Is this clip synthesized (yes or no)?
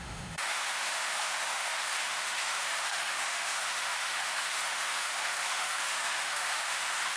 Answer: yes